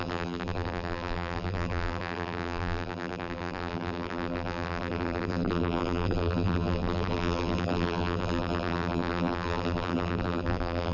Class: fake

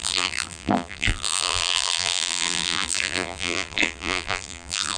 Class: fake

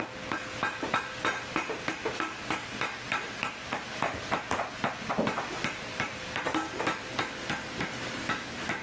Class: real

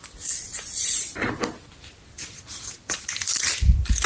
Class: real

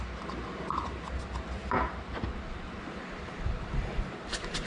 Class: real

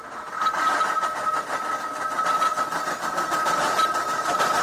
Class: real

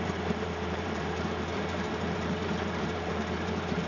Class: fake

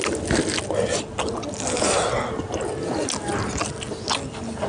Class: real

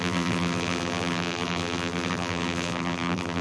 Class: fake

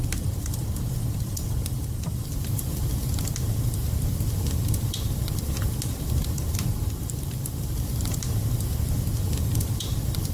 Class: fake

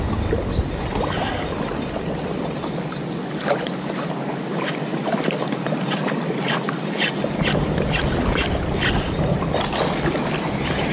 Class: real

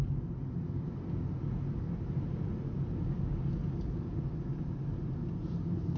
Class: real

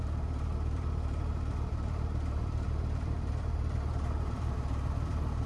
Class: fake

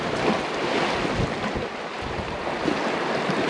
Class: real